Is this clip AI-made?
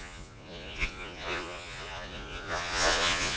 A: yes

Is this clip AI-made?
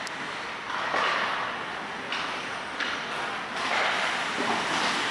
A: no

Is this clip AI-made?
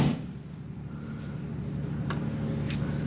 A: no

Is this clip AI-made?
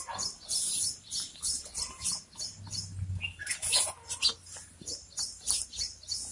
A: no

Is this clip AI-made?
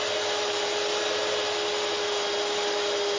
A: no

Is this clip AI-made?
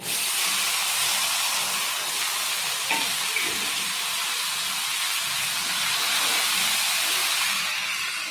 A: no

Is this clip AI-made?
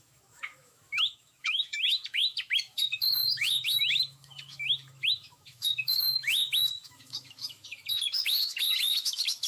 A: yes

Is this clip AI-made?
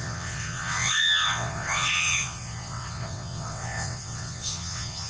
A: yes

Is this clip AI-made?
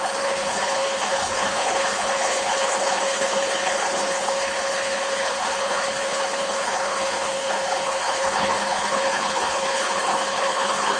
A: yes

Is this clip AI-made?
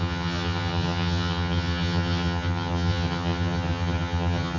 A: yes